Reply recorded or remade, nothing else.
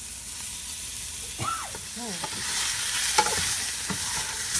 recorded